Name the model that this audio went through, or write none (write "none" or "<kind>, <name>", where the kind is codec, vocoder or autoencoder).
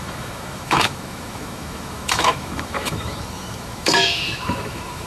autoencoder, DAC-VAE